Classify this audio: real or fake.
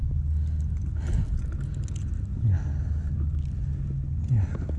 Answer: real